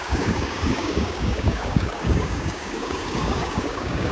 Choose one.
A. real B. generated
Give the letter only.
B